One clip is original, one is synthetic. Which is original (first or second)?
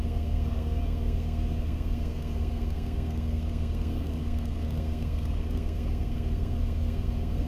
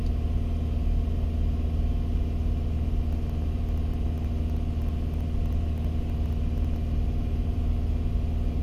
second